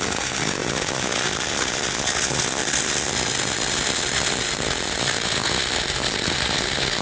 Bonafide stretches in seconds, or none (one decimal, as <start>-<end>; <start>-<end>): 0.0-7.0